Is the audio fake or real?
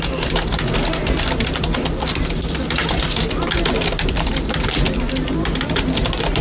real